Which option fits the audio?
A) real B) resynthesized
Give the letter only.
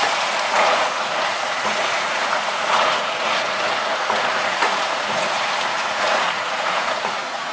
B